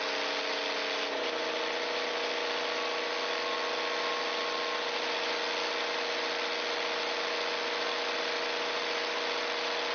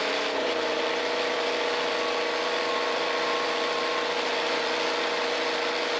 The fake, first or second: second